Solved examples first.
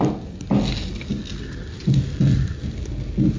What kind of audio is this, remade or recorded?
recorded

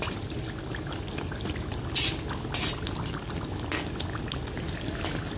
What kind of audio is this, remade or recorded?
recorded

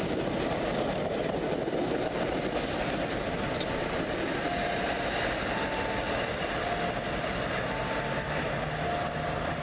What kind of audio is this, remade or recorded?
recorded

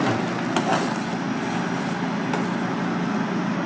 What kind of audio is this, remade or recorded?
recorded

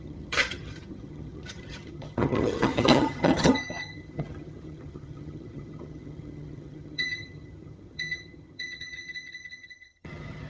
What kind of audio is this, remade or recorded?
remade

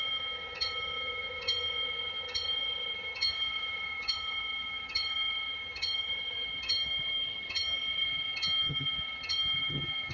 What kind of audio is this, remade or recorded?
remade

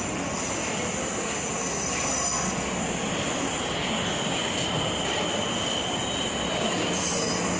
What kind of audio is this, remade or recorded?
recorded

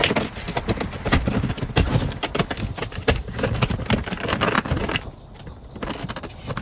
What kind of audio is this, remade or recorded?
recorded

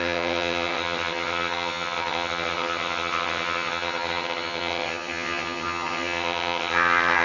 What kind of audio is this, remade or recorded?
remade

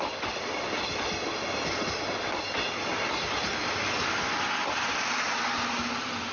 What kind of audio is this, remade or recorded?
recorded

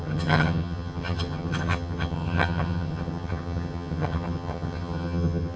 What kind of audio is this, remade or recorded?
remade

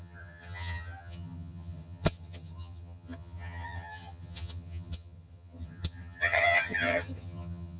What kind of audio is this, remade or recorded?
remade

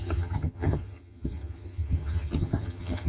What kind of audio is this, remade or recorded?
remade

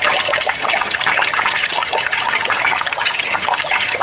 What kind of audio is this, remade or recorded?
remade